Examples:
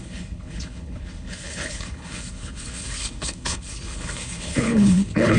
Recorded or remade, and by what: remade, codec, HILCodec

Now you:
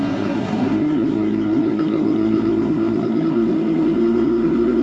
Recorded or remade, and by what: remade, codec, SNAC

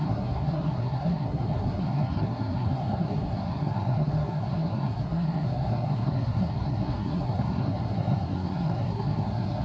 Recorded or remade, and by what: remade, codec, SNAC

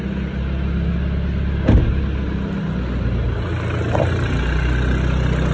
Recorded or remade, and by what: recorded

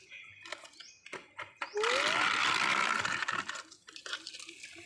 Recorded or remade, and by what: recorded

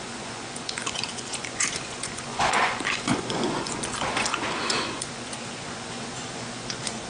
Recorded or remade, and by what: remade, vocoder, Vocos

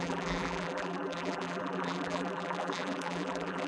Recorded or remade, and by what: remade, vocoder, BigVGAN v2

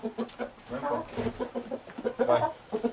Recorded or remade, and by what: recorded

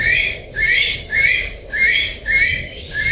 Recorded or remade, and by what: remade, codec, DAC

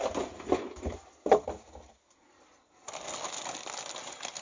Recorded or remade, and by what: recorded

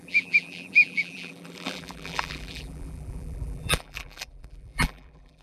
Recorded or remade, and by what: remade, vocoder, BigVGAN v2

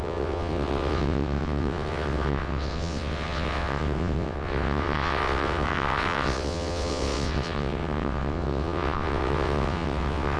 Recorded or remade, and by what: remade, vocoder, WaveNeXt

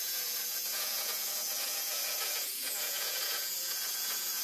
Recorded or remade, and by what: remade, vocoder, Vocos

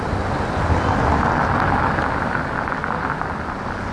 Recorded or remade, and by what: recorded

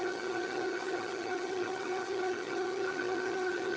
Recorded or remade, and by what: remade, vocoder, HiFi-GAN